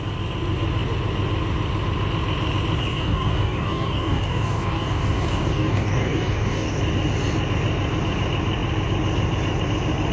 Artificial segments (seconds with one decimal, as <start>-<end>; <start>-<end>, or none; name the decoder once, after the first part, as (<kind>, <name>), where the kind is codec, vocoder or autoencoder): 2.8-6.8 (codec, DAC)